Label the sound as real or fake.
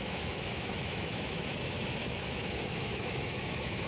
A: fake